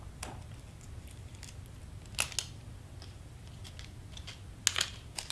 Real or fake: real